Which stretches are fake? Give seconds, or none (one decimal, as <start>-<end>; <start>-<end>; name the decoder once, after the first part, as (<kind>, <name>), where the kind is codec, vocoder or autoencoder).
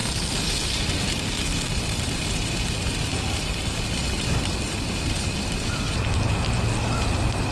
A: none